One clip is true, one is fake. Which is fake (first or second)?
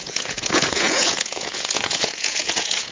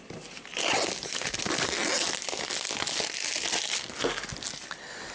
first